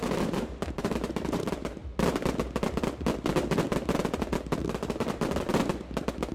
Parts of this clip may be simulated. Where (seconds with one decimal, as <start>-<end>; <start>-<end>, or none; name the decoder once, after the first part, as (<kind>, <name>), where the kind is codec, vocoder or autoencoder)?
0.0-1.8 (vocoder, BigVGAN v2); 4.6-5.5